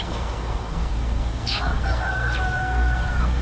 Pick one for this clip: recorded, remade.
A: remade